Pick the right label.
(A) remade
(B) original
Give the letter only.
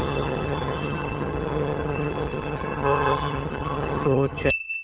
A